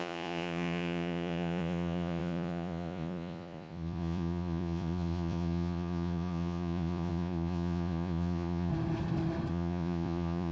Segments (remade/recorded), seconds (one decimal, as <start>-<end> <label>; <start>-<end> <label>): 0.0-8.7 remade; 8.7-9.5 recorded; 9.5-10.5 remade